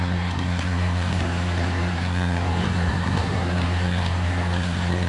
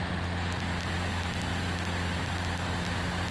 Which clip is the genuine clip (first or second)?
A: second